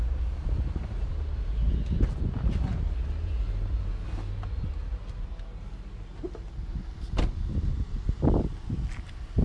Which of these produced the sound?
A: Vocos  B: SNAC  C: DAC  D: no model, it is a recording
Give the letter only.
D